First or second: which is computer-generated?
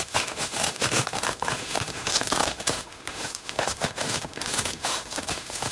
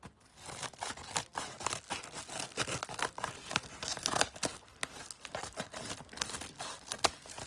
first